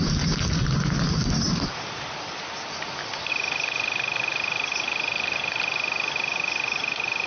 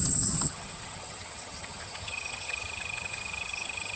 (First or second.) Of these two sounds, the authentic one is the first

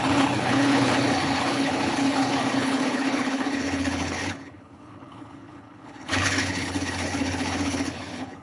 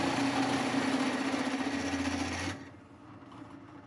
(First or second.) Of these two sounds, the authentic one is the second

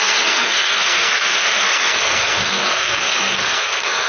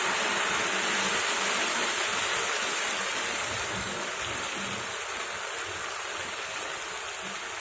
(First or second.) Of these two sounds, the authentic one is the second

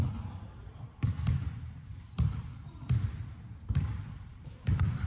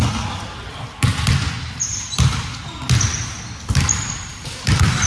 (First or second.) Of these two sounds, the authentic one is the second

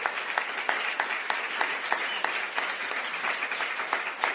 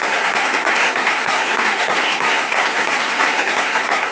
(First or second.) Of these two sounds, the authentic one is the first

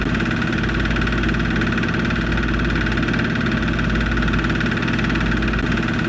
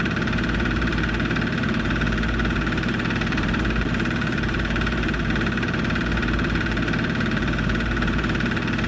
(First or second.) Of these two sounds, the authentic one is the first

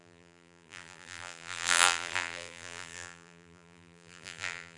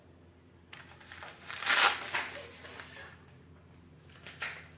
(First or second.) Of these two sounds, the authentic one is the second